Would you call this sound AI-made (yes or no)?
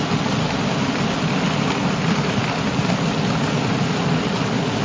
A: no